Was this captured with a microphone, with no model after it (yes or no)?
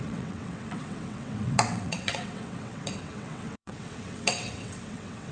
no